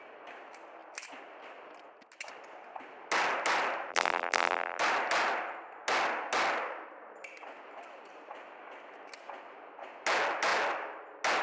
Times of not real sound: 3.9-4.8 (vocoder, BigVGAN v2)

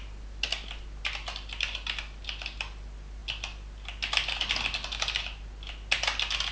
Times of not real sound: none

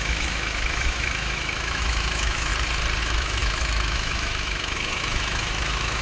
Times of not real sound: 0.0-2.5 (autoencoder, DAC-VAE); 3.0-6.0

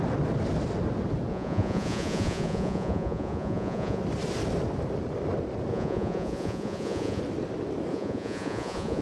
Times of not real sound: 1.3-4.0 (vocoder, Vocos); 5.7-7.2; 7.9-9.0

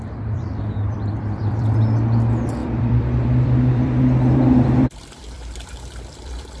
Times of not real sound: 0.0-6.6 (vocoder, BigVGAN v2)

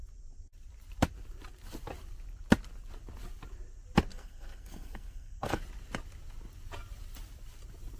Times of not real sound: 4.1-5.6 (codec, SNAC)